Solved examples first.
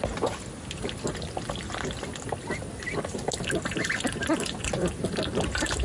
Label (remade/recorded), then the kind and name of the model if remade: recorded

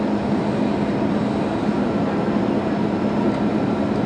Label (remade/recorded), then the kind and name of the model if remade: recorded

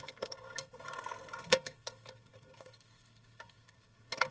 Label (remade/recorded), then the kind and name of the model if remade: remade, codec, SNAC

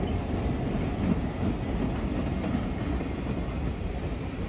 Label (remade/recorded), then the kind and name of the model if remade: recorded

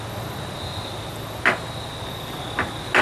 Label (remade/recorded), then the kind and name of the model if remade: recorded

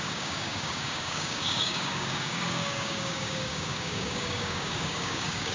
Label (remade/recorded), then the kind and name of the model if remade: remade, codec, DAC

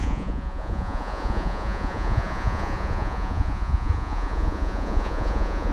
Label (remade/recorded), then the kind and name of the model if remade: remade, vocoder, Vocos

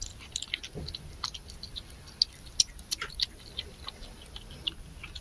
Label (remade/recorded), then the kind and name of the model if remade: recorded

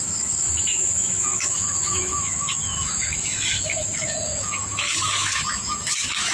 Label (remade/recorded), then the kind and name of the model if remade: remade, autoencoder, DAC-VAE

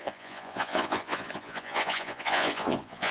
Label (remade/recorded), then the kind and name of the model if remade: remade, vocoder, Vocos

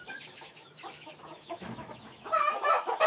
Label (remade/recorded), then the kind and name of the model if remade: remade, autoencoder, DAC-VAE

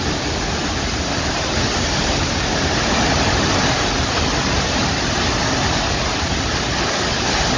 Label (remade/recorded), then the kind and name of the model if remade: recorded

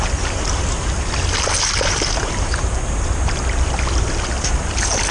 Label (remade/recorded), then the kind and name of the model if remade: recorded